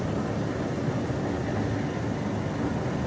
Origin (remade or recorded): recorded